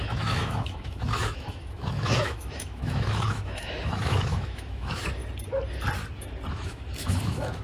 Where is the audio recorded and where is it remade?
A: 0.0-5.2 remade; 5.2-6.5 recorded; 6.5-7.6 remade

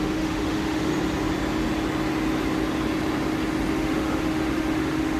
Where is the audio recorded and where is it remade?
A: 0.0-0.9 remade; 0.9-3.7 recorded; 3.7-5.2 remade

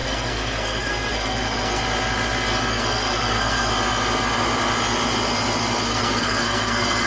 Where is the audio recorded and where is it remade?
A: 0.0-1.8 remade; 1.8-2.7 recorded; 2.7-3.7 remade; 3.7-5.9 recorded; 5.9-7.1 remade

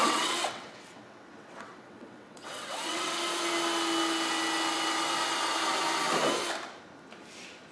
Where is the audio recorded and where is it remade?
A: 0.0-3.2 remade; 3.2-7.7 recorded

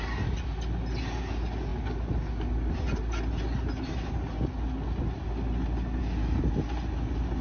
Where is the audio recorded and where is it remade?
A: 0.0-7.4 recorded

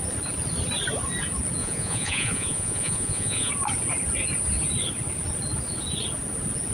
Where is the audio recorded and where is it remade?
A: 0.0-1.6 recorded; 1.6-3.5 remade; 3.5-6.7 recorded

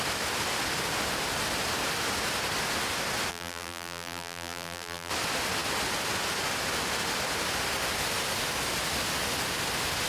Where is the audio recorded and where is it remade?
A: 0.0-3.3 recorded; 3.3-5.1 remade; 5.1-10.1 recorded

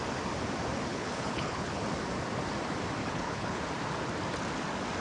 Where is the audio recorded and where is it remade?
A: 0.0-0.9 recorded; 0.9-1.8 remade; 1.8-3.0 recorded; 3.0-3.6 remade; 3.6-5.0 recorded